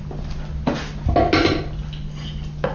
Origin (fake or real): real